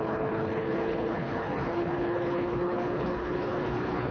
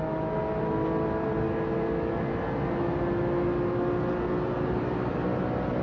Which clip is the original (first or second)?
second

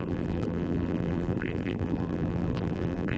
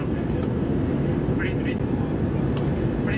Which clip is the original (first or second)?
second